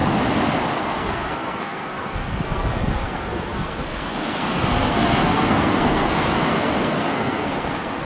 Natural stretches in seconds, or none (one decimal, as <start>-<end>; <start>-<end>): 0.0-0.8